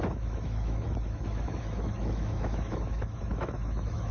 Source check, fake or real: fake